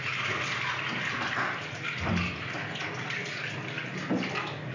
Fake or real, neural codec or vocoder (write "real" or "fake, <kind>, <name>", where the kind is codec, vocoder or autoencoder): real